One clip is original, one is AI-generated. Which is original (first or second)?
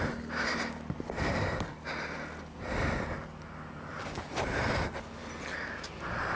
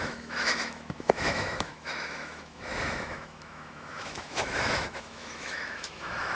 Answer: first